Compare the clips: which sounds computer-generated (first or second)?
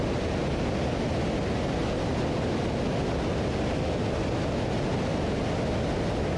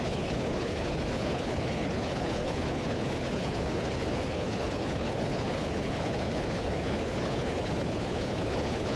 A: second